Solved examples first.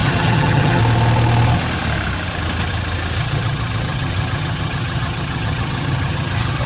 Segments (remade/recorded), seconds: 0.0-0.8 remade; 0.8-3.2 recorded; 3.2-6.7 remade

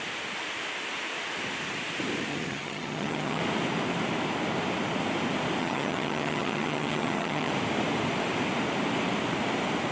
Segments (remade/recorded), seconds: 0.0-2.3 recorded; 2.3-3.4 remade; 3.4-5.6 recorded; 5.6-7.5 remade; 7.5-9.9 recorded